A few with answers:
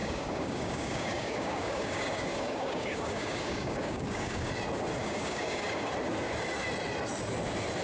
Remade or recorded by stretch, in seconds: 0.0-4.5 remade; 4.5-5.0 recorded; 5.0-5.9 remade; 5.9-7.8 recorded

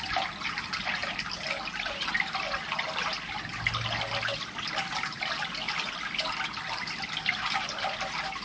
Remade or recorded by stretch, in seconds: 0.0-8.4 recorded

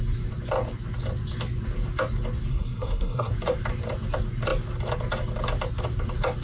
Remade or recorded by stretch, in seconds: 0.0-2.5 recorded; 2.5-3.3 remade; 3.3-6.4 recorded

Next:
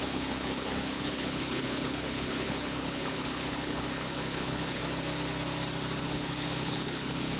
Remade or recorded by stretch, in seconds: 0.0-4.8 remade; 4.8-6.0 recorded; 6.0-7.4 remade